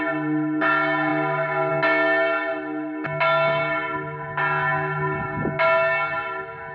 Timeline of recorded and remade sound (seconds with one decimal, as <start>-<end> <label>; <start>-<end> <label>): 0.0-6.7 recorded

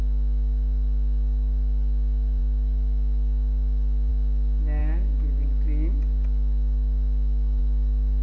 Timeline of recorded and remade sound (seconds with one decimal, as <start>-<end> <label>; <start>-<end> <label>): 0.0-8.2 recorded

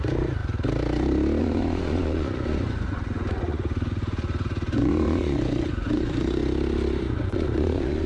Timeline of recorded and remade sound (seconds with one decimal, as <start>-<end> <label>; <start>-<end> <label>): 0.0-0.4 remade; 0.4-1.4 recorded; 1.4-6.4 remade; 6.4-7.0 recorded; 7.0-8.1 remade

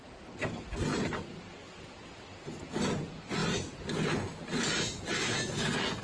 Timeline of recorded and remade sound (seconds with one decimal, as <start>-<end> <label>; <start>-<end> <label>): 0.0-6.0 recorded

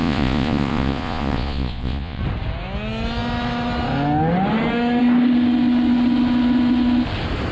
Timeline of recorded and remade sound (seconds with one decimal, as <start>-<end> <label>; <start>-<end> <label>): 0.0-2.2 remade; 2.2-7.5 recorded

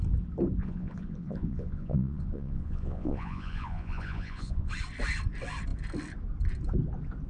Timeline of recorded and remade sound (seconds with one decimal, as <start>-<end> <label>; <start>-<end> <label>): 0.0-0.6 recorded; 0.6-4.7 remade; 4.7-7.3 recorded

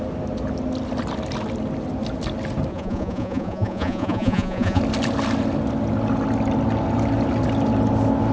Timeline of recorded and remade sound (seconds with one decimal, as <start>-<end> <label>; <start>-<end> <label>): 0.0-2.7 recorded; 2.7-4.8 remade; 4.8-8.3 recorded

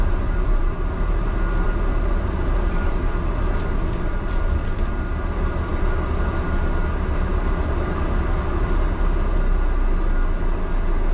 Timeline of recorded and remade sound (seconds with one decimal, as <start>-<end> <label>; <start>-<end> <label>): 0.0-11.1 recorded